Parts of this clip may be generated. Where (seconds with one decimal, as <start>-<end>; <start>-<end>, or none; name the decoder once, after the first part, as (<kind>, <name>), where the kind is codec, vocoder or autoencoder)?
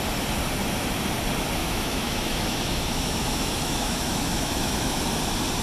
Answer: 1.6-5.0 (autoencoder, DAC-VAE)